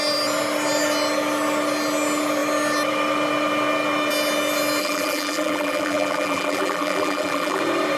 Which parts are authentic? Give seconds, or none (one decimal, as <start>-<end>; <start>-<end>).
0.0-4.8; 7.6-8.0